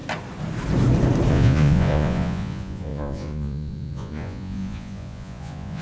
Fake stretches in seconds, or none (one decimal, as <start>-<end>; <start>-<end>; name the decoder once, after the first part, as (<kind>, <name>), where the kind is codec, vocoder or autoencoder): 1.3-5.8 (vocoder, Vocos)